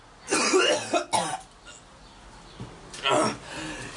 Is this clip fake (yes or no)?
no